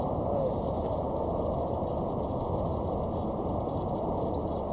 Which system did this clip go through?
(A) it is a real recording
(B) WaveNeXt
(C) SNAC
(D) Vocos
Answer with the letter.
A